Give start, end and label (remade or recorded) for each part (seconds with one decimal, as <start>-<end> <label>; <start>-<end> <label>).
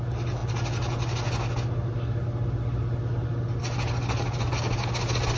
0.0-5.4 recorded